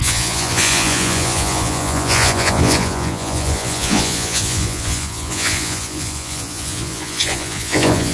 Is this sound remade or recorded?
remade